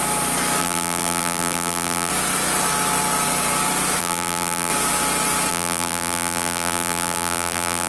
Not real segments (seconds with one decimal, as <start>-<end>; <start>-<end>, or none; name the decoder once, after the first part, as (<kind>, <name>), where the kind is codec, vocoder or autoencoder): 0.6-2.1 (vocoder, BigVGAN v2); 4.0-4.7; 5.5-7.9